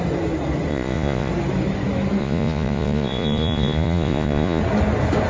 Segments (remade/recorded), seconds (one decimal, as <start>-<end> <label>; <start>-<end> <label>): 0.0-0.7 recorded; 0.7-1.3 remade; 1.3-2.2 recorded; 2.2-4.6 remade; 4.6-5.3 recorded